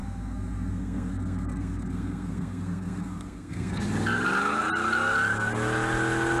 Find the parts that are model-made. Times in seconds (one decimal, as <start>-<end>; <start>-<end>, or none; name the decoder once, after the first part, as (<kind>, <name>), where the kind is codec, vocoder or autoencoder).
0.0-3.8 (codec, SNAC)

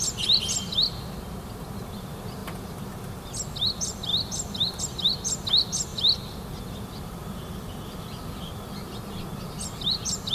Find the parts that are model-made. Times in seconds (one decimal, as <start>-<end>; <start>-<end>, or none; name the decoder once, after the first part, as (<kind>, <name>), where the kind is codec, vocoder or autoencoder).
none